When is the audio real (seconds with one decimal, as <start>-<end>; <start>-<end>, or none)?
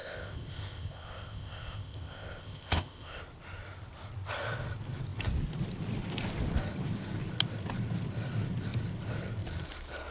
3.2-10.1